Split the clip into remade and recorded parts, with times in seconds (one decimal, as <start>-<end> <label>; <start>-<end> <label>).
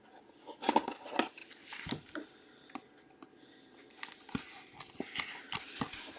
0.0-6.2 recorded